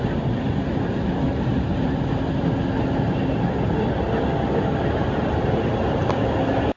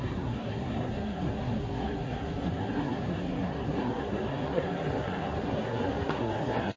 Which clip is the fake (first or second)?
second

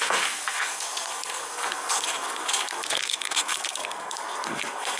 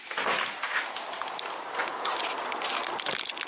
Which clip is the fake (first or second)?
first